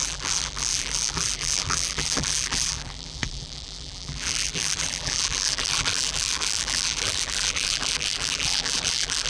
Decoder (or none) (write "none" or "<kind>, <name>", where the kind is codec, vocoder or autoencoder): vocoder, BigVGAN v2